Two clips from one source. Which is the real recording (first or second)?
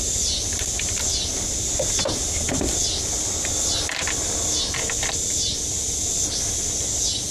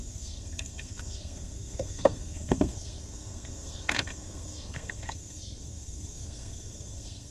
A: first